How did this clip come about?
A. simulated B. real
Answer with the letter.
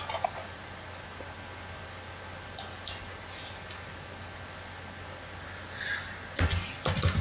B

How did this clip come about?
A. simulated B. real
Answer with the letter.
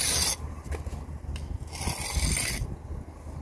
B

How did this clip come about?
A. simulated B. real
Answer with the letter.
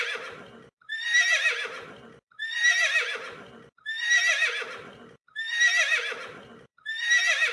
A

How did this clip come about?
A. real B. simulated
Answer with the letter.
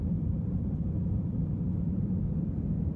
A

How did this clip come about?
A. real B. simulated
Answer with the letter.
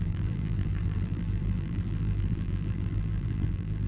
B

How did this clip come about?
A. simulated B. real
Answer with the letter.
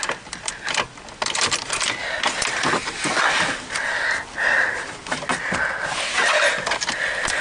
B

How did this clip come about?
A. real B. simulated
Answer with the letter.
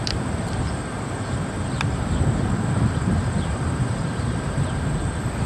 B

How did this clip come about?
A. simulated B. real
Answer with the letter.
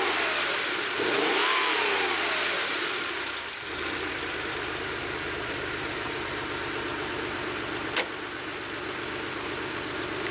A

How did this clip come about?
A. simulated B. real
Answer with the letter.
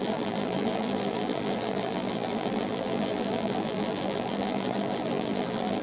A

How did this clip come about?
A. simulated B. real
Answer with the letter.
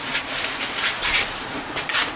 B